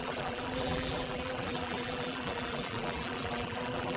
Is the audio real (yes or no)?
no